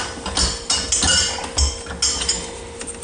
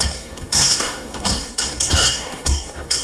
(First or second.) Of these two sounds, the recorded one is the first